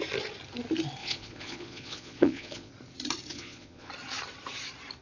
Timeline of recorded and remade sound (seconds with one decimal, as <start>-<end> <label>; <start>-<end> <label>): 0.0-1.0 recorded; 1.0-2.7 remade; 2.7-3.3 recorded; 3.3-3.9 remade; 3.9-5.0 recorded